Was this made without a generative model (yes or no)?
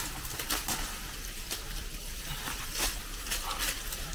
yes